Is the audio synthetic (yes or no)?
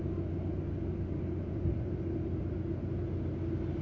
no